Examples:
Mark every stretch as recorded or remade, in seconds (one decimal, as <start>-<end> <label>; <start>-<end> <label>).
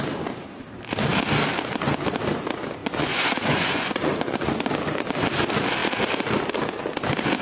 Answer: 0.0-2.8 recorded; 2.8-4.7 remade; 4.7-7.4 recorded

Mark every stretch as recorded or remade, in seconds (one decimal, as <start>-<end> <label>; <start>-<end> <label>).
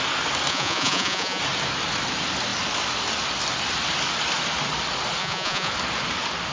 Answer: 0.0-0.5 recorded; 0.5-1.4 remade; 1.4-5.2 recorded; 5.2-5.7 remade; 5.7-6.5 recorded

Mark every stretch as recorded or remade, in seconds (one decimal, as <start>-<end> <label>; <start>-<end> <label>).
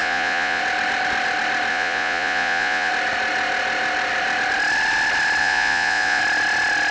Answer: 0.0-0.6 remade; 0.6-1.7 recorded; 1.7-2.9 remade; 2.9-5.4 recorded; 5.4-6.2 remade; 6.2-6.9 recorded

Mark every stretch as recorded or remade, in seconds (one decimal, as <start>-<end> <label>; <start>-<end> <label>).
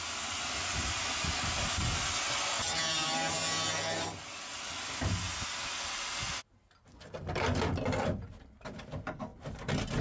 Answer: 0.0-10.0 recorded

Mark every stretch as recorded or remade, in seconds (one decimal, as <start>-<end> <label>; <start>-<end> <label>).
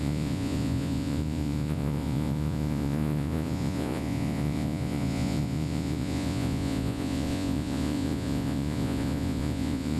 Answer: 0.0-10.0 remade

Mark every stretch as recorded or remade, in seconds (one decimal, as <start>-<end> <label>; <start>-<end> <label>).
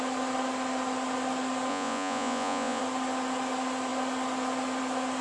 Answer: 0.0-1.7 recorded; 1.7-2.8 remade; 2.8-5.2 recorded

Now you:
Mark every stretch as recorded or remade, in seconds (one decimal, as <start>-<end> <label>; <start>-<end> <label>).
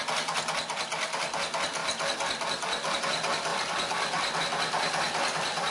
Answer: 0.0-5.7 recorded